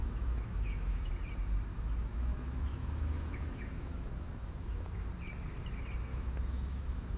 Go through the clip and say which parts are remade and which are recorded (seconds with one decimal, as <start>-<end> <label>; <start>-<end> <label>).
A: 0.0-1.1 remade; 1.1-1.7 recorded; 1.7-5.1 remade; 5.1-6.1 recorded; 6.1-7.2 remade